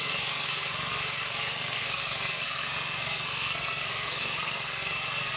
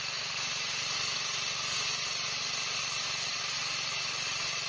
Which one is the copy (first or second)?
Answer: first